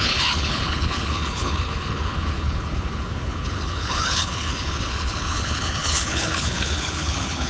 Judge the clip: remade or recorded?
remade